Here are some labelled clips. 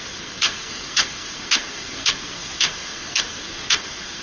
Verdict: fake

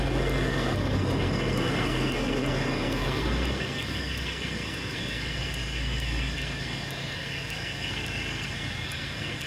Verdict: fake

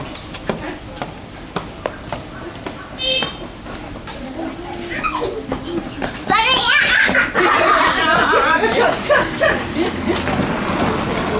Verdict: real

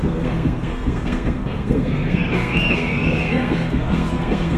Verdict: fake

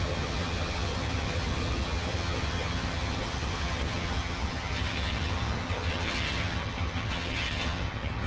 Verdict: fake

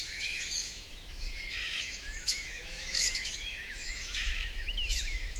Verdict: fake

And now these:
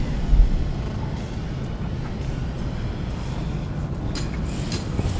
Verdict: real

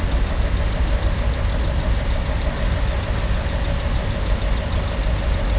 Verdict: real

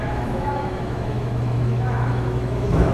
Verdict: fake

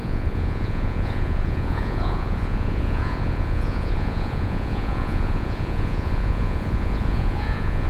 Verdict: fake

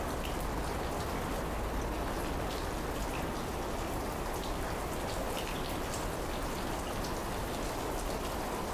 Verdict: real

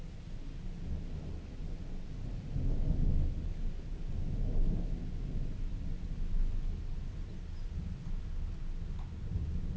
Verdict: real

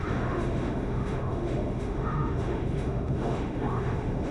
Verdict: fake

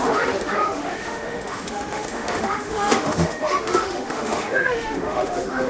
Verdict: fake